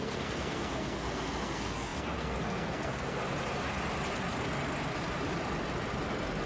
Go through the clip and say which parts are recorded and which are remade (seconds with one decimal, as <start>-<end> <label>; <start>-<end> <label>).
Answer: 0.0-3.2 remade; 3.2-6.5 recorded